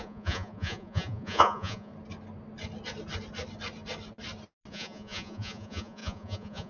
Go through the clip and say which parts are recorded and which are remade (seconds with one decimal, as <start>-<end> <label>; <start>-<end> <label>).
0.0-1.9 remade; 1.9-4.7 recorded; 4.7-6.7 remade